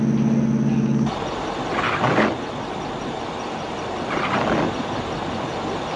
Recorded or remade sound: recorded